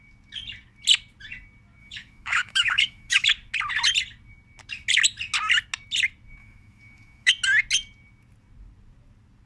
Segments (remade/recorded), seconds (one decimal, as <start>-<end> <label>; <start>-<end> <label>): 0.0-1.8 recorded; 1.8-3.3 remade; 3.3-6.4 recorded; 6.4-7.3 remade; 7.3-9.5 recorded

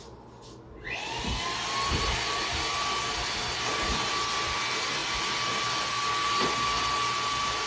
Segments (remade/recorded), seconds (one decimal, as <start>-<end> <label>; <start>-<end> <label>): 0.0-7.7 recorded

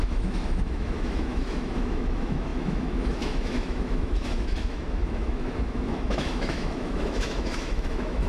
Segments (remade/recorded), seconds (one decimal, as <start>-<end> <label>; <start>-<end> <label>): 0.0-8.3 remade

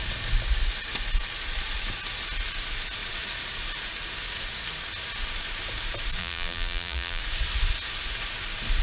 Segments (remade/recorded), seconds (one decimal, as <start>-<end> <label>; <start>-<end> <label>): 0.0-6.2 recorded; 6.2-7.2 remade; 7.2-8.8 recorded